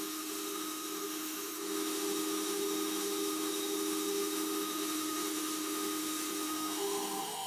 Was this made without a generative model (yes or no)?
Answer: no